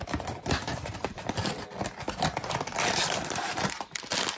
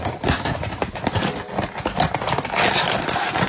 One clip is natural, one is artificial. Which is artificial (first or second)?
first